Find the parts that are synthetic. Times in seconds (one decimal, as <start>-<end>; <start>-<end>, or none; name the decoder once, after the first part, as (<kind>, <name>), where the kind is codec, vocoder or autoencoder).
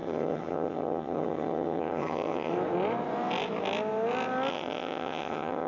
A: 0.0-2.5 (vocoder, HiFi-GAN); 4.5-5.7